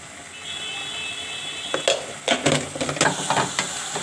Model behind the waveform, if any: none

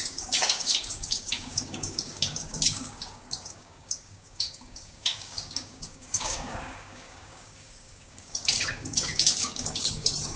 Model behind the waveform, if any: codec, DAC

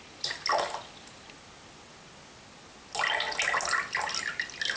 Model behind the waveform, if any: none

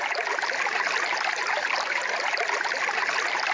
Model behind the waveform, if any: none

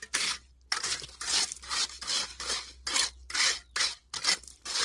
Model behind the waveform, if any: none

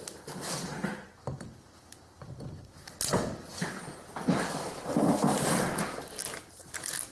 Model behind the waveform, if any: none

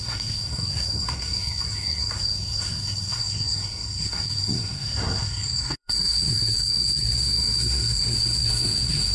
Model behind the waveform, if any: codec, SNAC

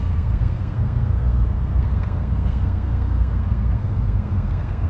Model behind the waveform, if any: codec, SNAC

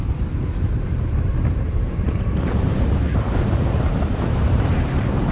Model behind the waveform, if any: vocoder, BigVGAN v2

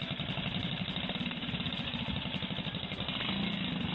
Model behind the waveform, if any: none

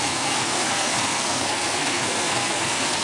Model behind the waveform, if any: codec, SNAC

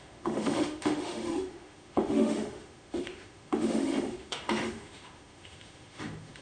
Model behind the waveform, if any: autoencoder, DAC-VAE